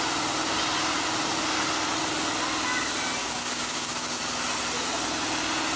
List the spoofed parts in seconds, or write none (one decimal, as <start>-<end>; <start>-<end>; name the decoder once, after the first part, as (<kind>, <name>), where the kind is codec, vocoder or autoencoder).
3.2-4.2 (codec, DAC)